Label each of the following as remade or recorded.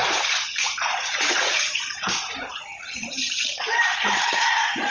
remade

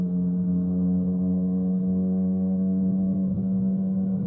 remade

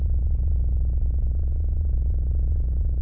remade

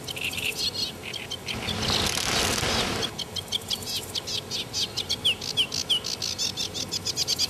recorded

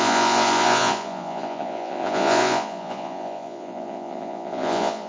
remade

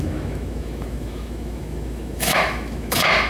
remade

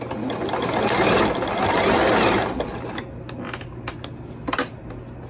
recorded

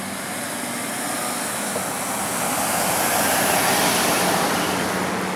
recorded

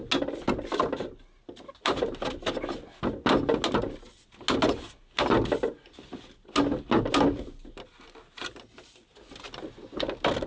recorded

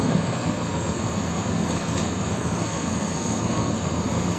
remade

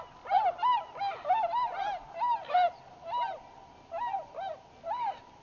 recorded